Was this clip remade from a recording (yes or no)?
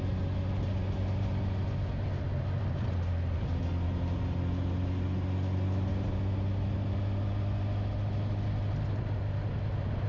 no